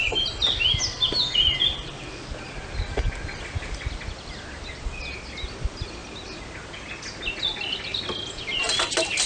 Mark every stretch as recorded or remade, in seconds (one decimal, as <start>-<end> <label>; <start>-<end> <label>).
0.0-9.3 recorded